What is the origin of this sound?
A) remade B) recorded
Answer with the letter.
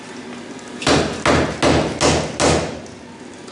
B